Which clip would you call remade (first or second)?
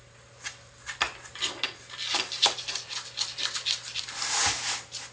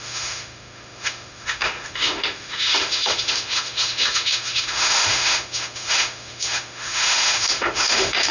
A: second